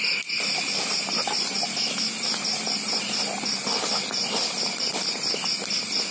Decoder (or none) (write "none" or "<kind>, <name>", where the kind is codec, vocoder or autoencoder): none